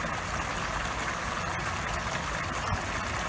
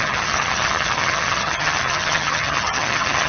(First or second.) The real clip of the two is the first